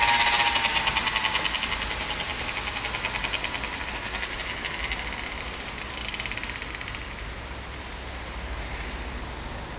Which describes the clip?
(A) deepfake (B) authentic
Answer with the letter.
B